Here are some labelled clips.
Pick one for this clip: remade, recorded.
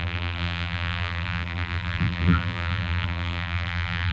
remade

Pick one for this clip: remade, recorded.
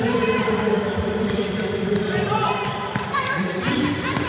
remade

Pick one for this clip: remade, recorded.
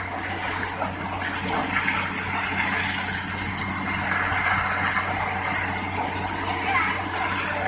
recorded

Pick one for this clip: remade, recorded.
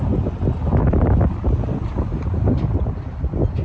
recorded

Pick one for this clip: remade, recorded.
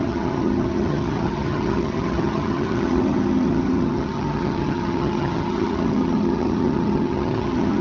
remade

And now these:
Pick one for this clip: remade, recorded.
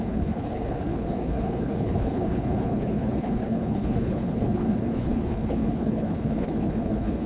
remade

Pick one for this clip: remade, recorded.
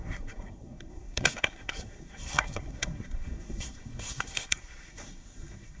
remade